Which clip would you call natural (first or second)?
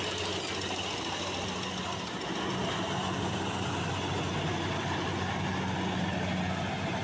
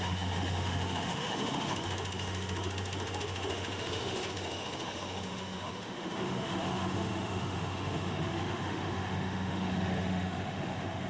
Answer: first